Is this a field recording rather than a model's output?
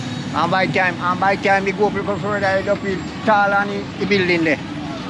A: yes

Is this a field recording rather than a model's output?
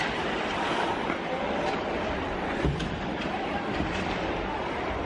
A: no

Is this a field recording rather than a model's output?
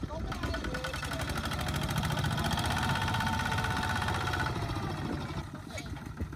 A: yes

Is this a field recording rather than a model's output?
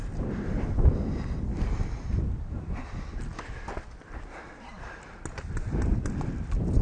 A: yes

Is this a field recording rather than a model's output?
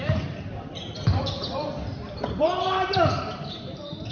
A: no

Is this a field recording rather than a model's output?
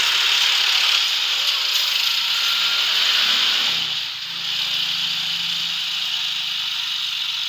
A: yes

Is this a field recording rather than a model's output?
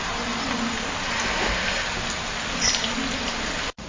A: yes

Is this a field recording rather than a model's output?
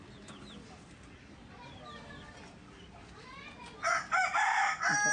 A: yes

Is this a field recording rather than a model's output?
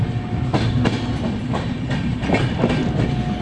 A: yes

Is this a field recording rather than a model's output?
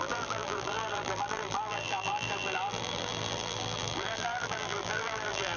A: no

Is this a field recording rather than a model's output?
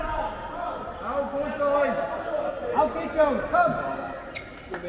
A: yes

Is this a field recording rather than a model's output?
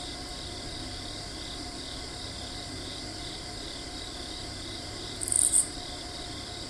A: no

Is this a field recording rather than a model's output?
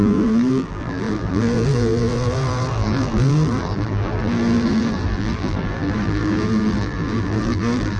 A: no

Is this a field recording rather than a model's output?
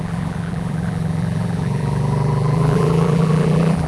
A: no